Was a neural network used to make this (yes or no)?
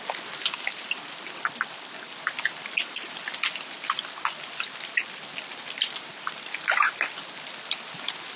no